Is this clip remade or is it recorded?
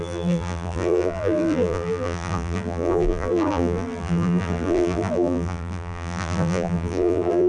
remade